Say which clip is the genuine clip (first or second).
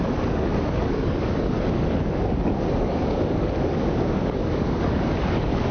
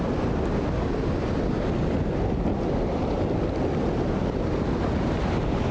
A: second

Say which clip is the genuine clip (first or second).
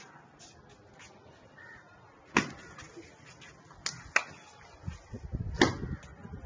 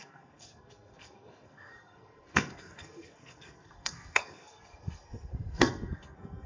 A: first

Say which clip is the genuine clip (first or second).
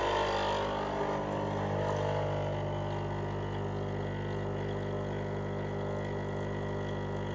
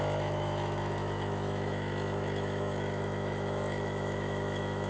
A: first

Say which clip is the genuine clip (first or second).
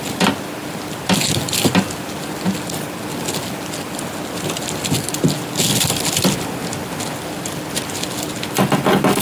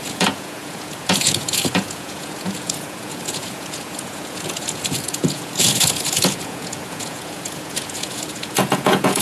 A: first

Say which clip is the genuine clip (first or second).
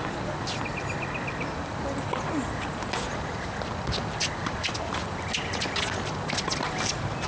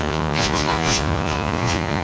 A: first